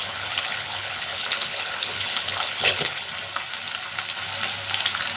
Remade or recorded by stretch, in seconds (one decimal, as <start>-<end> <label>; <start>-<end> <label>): 0.0-3.1 remade; 3.1-5.2 recorded